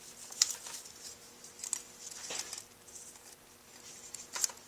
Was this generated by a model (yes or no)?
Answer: no